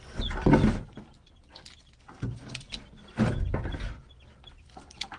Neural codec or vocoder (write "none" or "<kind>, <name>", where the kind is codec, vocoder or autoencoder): none